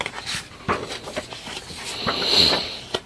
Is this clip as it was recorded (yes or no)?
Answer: yes